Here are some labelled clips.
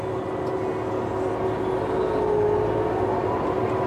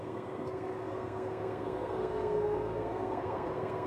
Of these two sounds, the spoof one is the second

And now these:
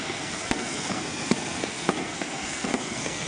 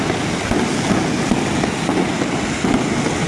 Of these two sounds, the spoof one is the first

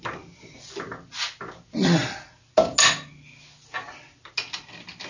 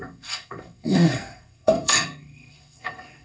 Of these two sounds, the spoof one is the second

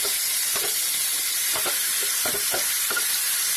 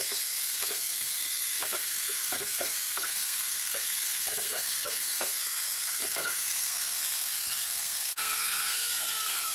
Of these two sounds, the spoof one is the second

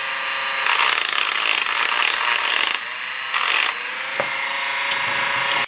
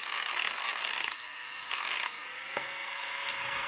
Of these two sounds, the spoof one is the second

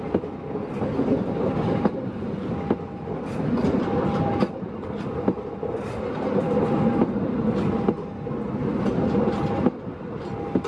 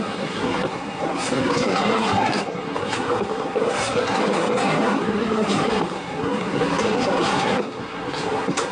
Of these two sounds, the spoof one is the second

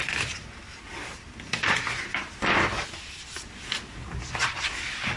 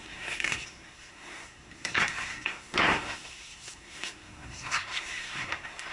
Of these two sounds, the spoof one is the second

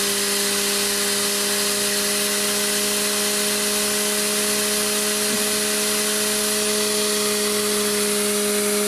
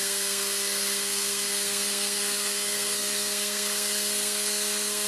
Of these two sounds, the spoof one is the second